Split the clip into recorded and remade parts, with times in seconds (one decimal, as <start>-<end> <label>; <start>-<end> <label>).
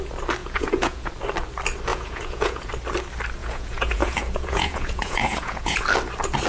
0.0-0.4 recorded; 0.4-1.1 remade; 1.1-1.9 recorded; 1.9-2.7 remade; 2.7-3.4 recorded; 3.4-5.8 remade; 5.8-6.5 recorded